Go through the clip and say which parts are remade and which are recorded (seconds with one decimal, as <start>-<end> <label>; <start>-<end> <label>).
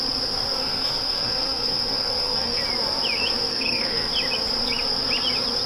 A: 0.0-0.6 recorded; 0.6-2.6 remade; 2.6-3.5 recorded; 3.5-4.1 remade; 4.1-5.7 recorded